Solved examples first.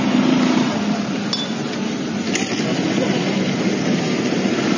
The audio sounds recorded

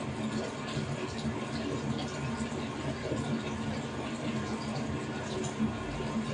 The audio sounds recorded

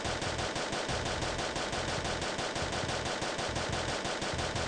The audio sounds recorded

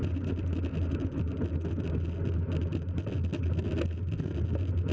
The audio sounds recorded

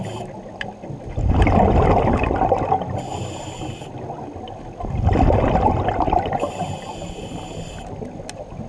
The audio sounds recorded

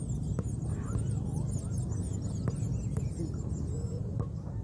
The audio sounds recorded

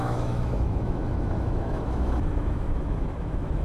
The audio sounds remade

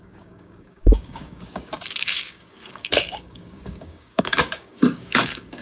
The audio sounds remade